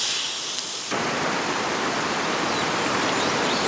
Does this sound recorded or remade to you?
recorded